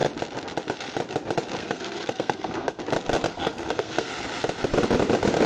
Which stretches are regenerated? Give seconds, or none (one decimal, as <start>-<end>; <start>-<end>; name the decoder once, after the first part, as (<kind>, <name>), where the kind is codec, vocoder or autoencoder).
1.6-2.8 (codec, SNAC); 3.3-4.1